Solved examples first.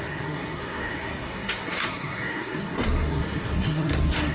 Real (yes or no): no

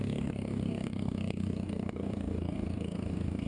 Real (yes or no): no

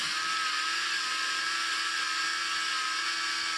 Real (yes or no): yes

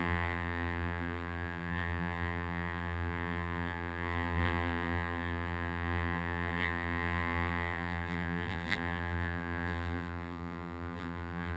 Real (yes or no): no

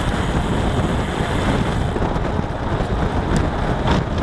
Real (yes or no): yes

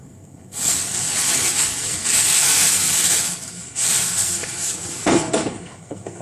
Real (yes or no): no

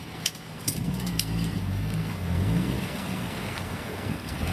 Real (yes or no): no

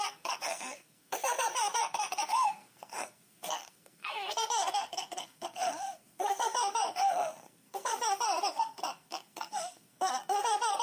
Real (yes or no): no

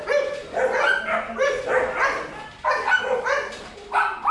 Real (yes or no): yes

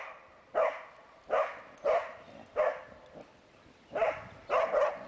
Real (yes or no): yes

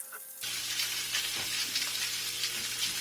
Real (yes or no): yes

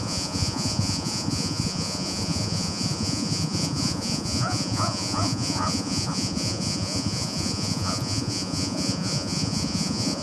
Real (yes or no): no